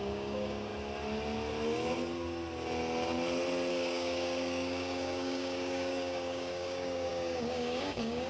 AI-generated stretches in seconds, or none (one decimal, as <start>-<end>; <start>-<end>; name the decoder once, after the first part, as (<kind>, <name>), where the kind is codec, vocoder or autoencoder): 0.0-0.7 (codec, DAC); 3.7-8.3